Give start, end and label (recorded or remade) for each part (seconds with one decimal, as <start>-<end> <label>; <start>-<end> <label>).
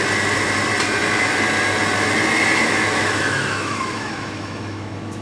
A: 0.0-2.6 recorded; 2.6-5.2 remade